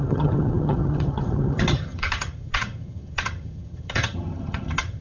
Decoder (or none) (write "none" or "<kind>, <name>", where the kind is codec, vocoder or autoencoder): vocoder, HiFi-GAN